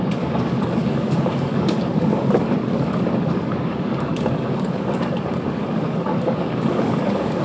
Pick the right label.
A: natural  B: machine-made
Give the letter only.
B